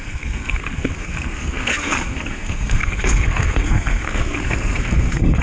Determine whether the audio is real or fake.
fake